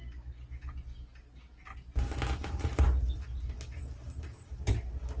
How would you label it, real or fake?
real